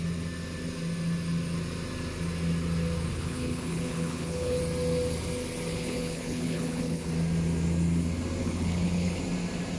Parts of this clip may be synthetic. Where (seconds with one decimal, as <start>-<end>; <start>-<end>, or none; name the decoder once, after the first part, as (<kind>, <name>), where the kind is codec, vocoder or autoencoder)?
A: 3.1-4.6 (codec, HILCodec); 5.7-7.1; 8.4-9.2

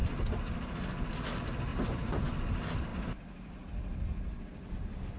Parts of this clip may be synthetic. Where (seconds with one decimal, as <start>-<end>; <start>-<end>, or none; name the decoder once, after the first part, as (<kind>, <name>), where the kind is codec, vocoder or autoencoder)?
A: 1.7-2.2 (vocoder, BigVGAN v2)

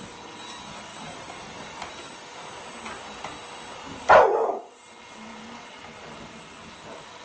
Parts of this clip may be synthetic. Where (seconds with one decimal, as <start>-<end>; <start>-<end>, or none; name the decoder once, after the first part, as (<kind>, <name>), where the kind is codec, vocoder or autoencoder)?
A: none

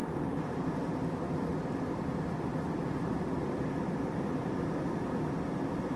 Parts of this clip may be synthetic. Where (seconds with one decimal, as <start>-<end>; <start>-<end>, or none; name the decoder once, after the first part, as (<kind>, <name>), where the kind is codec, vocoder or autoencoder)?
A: 0.0-0.7 (vocoder, BigVGAN v2); 1.5-5.1

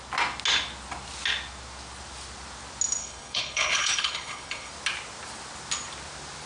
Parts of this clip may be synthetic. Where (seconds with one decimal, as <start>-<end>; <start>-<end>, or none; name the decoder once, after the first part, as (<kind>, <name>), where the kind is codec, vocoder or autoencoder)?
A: 3.0-4.7 (codec, HILCodec)

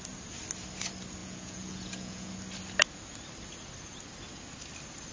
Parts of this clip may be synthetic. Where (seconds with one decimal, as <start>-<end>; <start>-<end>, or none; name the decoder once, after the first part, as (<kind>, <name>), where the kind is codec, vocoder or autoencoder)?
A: 1.2-2.3 (vocoder, Vocos)

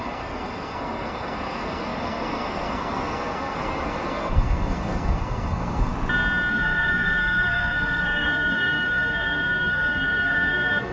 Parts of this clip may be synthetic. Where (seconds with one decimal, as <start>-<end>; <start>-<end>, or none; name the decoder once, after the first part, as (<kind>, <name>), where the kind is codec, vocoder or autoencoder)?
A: 0.0-5.9 (codec, SNAC); 6.5-10.9